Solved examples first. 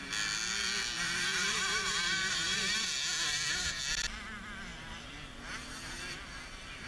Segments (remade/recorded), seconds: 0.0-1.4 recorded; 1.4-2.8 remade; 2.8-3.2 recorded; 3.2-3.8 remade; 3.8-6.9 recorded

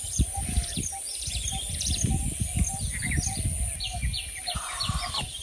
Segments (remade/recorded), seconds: 0.0-1.3 remade; 1.3-4.5 recorded; 4.5-5.4 remade